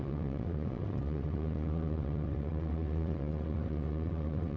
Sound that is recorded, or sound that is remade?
remade